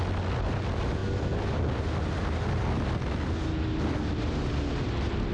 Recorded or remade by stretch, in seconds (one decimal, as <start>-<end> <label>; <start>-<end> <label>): 0.0-5.3 recorded

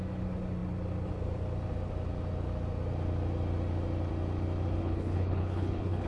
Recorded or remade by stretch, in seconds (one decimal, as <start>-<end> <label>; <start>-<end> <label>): 0.0-4.8 recorded; 4.8-6.1 remade